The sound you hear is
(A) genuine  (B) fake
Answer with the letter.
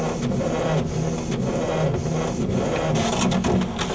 A